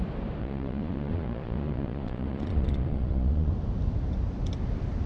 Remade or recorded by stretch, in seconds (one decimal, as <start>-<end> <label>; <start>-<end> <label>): 0.0-0.4 recorded; 0.4-3.5 remade; 3.5-5.1 recorded

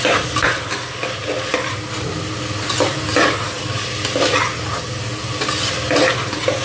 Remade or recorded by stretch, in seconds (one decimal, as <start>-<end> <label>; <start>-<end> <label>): 0.0-6.6 recorded

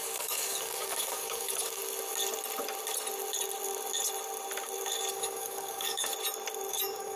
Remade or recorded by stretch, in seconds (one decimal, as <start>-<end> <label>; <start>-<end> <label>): 0.0-1.8 remade; 1.8-5.1 recorded; 5.1-6.1 remade; 6.1-6.7 recorded; 6.7-7.2 remade

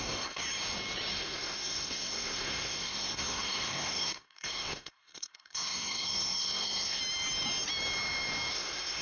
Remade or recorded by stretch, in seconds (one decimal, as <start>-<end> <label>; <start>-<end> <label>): 0.0-0.4 remade; 0.4-1.1 recorded; 1.1-7.0 remade; 7.0-8.5 recorded; 8.5-9.0 remade